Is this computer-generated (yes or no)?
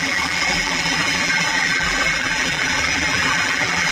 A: yes